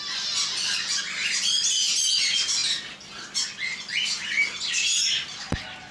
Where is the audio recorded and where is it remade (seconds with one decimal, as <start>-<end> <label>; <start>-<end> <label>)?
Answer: 0.0-5.9 recorded